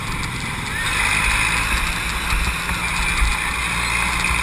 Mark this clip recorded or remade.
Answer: recorded